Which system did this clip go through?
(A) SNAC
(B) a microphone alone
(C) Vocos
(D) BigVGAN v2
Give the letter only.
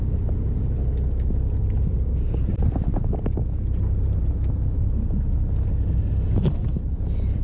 B